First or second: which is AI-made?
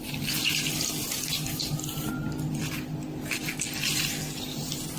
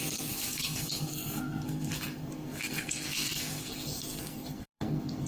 second